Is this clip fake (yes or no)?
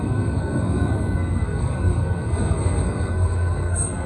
yes